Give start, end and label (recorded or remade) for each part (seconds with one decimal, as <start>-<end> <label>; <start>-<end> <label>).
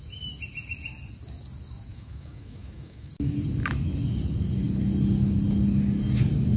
0.0-1.9 recorded; 1.9-3.1 remade; 3.1-6.6 recorded